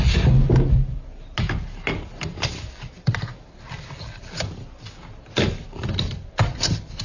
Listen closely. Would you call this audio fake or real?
real